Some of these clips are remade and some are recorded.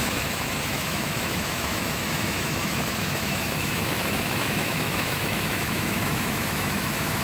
remade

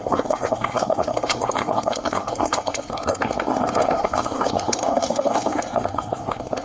remade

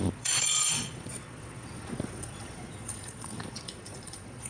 remade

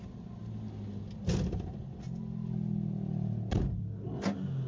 recorded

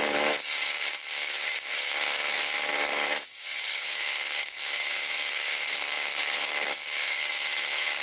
remade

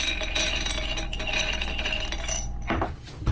recorded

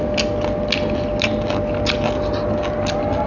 recorded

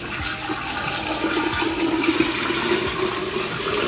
recorded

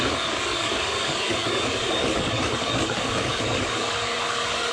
remade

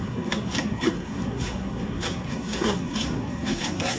remade